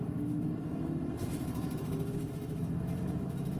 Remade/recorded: remade